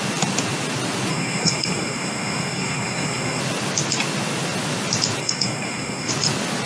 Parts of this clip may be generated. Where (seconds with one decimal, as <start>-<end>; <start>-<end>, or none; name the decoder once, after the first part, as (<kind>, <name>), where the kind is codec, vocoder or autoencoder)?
1.1-3.4 (codec, SNAC); 5.2-6.1